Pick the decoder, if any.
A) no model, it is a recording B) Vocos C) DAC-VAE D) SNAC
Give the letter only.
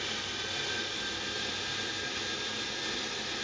A